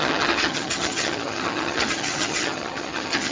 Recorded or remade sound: remade